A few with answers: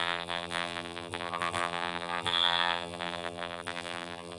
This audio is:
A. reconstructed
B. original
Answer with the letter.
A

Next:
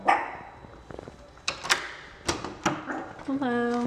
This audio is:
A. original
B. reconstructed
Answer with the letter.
A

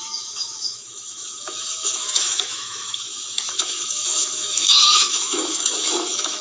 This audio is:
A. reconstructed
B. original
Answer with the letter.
A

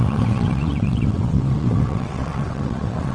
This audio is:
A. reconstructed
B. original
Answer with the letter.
A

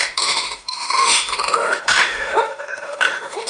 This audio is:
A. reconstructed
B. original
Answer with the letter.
A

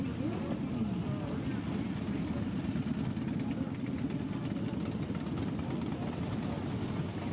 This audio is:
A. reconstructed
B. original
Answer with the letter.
B